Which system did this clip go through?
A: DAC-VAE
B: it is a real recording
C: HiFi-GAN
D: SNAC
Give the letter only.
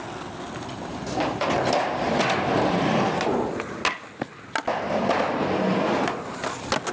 B